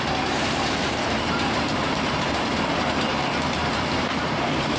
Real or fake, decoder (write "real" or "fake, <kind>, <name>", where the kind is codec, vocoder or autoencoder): fake, vocoder, BigVGAN v2